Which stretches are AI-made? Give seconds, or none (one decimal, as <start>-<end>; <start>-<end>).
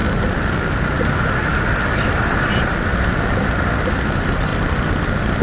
none